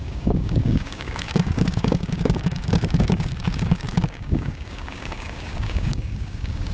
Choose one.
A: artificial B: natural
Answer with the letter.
A